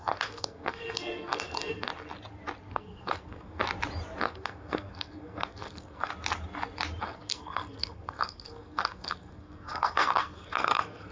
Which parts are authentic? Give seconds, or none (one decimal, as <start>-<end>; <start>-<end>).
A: 1.9-2.7; 3.6-4.2; 6.1-7.0